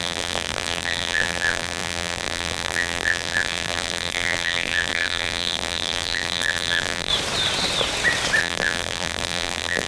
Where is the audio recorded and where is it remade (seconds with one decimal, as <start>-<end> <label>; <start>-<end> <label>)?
0.0-7.1 remade; 7.1-8.4 recorded; 8.4-9.9 remade